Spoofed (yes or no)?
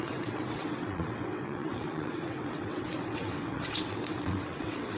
yes